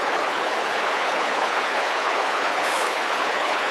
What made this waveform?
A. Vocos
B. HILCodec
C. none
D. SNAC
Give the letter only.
B